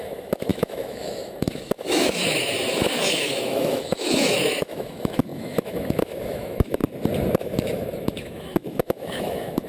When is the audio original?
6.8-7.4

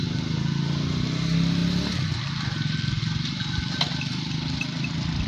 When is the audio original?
0.0-5.3

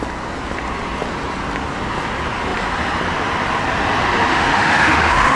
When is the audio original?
0.0-4.3

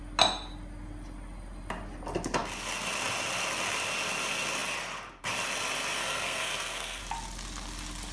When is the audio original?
0.0-6.0; 7.0-8.1

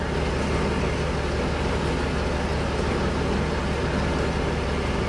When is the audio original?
0.0-5.1

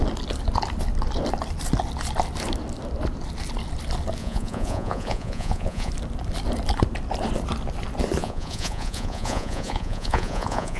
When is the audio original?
0.0-4.2; 5.9-8.2